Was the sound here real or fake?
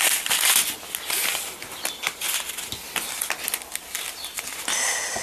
real